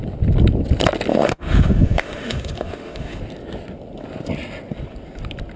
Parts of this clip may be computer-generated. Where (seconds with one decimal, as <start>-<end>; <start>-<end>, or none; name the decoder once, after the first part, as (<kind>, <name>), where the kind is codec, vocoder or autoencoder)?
1.1-3.2 (autoencoder, DAC-VAE)